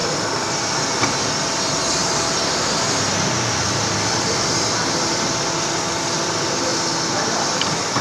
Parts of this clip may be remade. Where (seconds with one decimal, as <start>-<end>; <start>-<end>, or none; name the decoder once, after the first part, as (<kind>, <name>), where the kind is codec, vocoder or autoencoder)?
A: none